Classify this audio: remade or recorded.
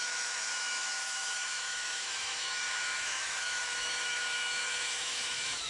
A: remade